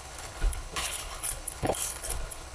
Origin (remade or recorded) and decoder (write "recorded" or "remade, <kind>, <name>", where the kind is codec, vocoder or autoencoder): remade, codec, HILCodec